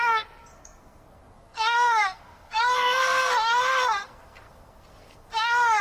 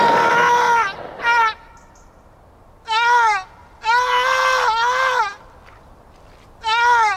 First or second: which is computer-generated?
first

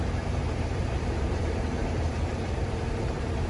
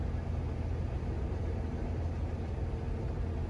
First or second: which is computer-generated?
first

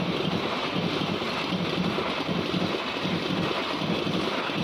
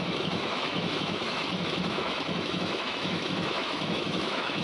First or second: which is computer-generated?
second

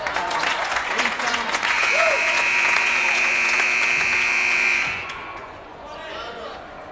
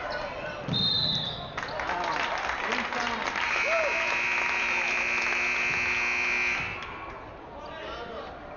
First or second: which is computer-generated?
first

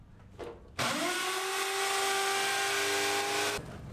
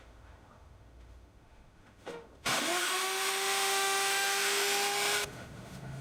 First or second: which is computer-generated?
second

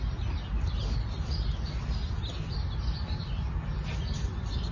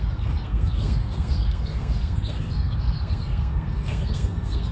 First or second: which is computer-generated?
second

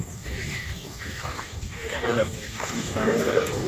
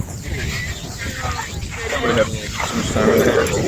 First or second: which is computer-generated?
first